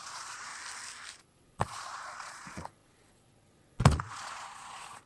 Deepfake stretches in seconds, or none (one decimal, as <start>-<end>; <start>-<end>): 0.0-0.5; 1.2-5.1